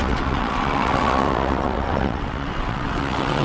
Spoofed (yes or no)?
yes